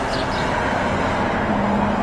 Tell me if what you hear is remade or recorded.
recorded